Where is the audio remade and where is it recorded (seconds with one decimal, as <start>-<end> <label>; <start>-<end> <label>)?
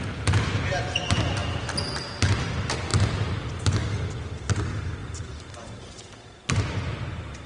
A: 0.0-5.0 recorded; 5.0-7.5 remade